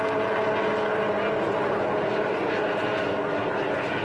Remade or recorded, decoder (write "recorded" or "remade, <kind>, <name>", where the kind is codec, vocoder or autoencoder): recorded